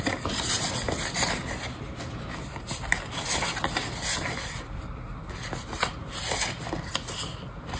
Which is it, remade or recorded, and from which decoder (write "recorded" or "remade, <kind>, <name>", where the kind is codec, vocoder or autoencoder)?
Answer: recorded